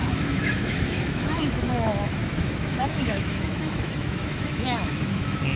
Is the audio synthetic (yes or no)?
yes